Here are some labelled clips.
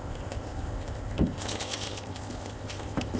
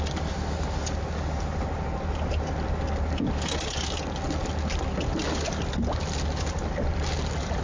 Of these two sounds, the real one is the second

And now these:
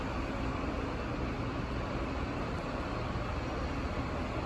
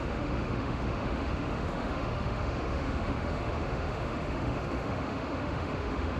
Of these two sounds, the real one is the first